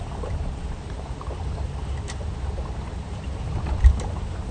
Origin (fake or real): fake